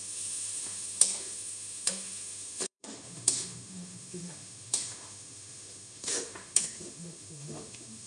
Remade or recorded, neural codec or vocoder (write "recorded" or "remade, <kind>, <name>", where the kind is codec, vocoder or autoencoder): remade, autoencoder, DAC-VAE